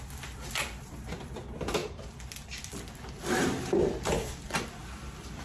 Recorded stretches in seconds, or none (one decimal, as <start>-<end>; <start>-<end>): 4.8-5.4